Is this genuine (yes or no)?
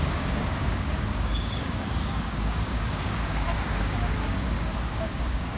no